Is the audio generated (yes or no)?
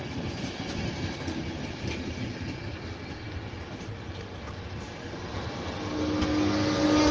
no